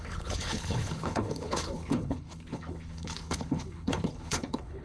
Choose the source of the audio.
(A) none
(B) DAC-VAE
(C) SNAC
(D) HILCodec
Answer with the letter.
D